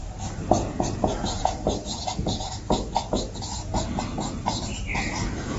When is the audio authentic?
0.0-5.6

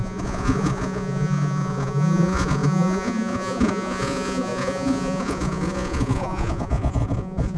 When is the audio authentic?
none

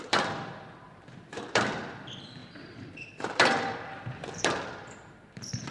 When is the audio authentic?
none

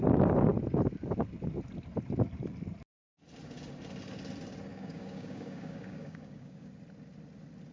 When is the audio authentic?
0.0-4.7; 6.7-7.7

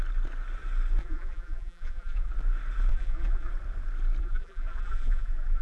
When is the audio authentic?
0.0-1.0; 2.3-2.9; 3.5-4.2

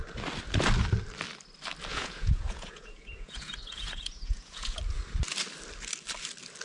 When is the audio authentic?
0.0-1.9; 4.8-6.6

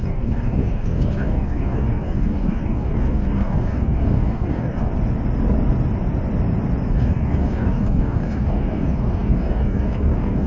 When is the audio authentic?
4.9-6.9

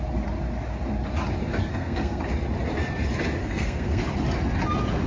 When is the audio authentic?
0.0-1.7; 2.2-3.4; 4.0-5.1